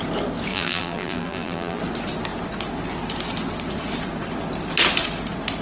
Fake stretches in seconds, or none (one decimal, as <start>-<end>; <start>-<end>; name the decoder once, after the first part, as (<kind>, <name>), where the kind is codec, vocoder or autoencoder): 0.5-1.8 (vocoder, BigVGAN v2)